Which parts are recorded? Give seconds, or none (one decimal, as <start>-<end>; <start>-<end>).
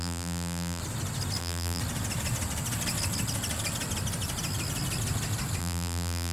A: 0.8-1.4; 1.8-5.6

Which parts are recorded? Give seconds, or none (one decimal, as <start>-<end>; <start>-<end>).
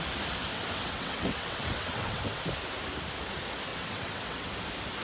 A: 0.0-0.5; 2.4-3.7; 4.5-5.0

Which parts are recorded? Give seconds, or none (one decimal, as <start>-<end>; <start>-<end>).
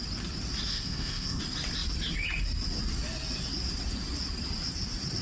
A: 0.0-0.7; 1.4-5.2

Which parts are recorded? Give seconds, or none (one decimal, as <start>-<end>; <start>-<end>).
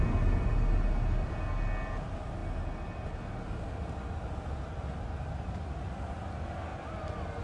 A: 0.0-6.7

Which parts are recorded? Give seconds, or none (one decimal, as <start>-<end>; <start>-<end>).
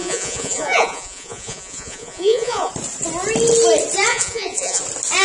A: 2.7-4.1; 4.8-5.2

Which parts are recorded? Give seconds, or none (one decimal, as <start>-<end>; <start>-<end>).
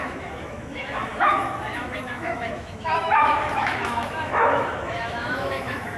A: none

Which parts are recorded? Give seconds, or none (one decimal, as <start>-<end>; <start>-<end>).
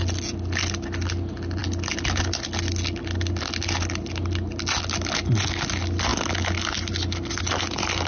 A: 0.0-8.1